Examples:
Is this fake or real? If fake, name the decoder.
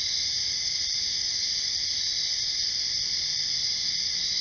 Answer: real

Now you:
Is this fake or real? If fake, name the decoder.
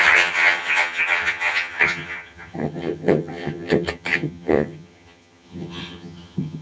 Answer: fake, vocoder, HiFi-GAN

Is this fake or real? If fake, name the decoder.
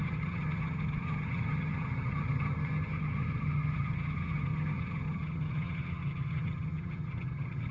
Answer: fake, vocoder, HiFi-GAN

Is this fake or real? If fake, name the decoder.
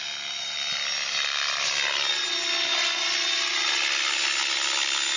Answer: real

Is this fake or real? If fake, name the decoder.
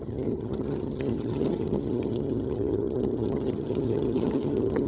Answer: fake, vocoder, HiFi-GAN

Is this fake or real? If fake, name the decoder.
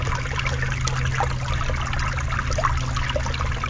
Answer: real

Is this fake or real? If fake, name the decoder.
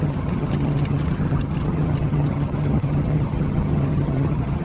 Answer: fake, vocoder, HiFi-GAN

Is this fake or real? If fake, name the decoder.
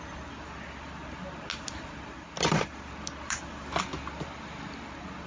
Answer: real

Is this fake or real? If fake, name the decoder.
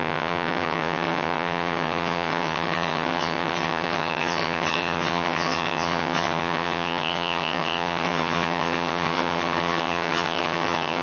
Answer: fake, vocoder, HiFi-GAN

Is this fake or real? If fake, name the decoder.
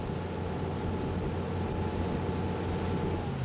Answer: real